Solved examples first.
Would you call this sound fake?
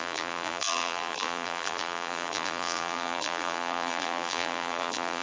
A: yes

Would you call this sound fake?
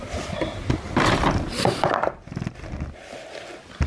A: no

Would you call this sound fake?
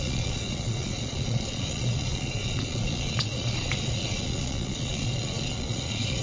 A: yes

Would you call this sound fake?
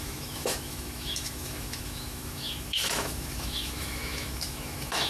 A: yes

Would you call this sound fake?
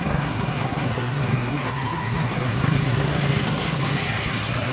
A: yes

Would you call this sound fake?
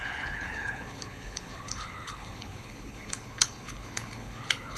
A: yes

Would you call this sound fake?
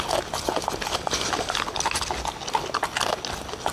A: no